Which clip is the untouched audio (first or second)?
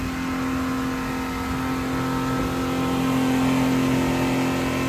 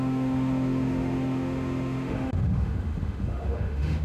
first